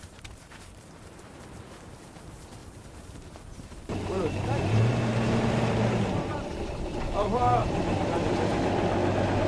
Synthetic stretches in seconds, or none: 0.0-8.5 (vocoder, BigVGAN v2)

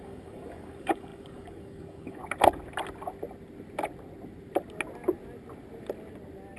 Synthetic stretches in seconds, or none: 0.0-2.2 (codec, DAC)

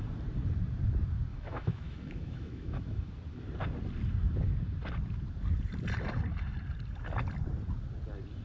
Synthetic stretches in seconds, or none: 1.3-3.1 (autoencoder, DAC-VAE)

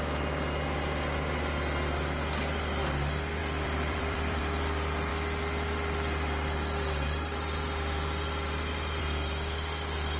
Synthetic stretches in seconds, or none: 3.4-4.4 (vocoder, BigVGAN v2)

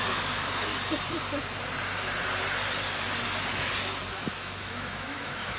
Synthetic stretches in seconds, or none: 0.0-0.7 (autoencoder, DAC-VAE); 4.1-5.6